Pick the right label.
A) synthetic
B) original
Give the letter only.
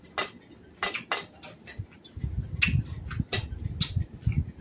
B